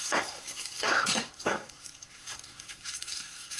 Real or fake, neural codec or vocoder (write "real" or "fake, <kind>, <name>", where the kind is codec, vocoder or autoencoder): fake, codec, SNAC